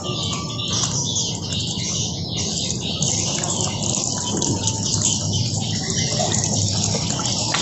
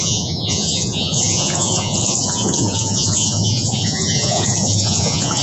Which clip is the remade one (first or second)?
second